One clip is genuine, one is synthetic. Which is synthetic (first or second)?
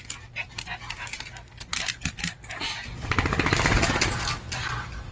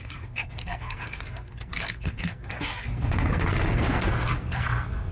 second